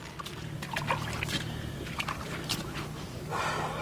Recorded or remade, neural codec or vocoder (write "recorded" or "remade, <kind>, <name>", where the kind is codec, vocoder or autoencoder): recorded